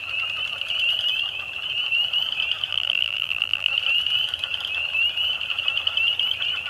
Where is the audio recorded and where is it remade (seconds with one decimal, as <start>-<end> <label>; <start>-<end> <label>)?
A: 0.0-2.7 recorded; 2.7-3.7 remade; 3.7-6.7 recorded